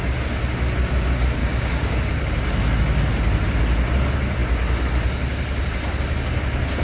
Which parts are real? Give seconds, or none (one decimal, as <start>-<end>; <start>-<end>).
0.0-1.4; 2.0-6.8